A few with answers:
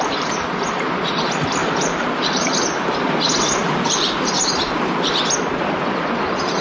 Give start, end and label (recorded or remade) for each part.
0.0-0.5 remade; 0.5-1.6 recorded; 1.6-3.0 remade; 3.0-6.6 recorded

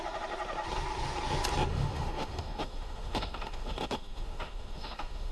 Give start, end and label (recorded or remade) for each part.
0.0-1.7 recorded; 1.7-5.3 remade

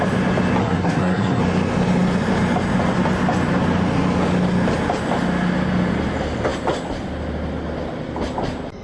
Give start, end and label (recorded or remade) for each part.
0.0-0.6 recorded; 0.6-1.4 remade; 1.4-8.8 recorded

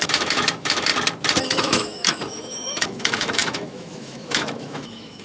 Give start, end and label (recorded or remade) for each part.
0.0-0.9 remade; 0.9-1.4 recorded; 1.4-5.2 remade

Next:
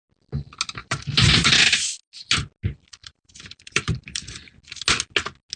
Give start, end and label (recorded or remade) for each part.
0.0-0.8 recorded; 0.8-1.6 remade; 1.6-3.0 recorded; 3.0-4.5 remade; 4.5-5.6 recorded

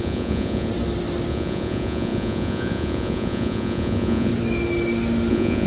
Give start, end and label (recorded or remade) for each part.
0.0-0.7 remade; 0.7-1.3 recorded; 1.3-4.3 remade; 4.3-5.3 recorded; 5.3-5.7 remade

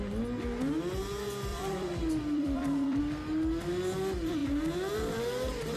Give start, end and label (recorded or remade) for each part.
0.0-1.5 recorded; 1.5-3.0 remade; 3.0-5.8 recorded